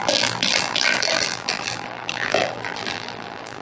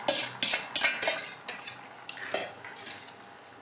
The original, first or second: second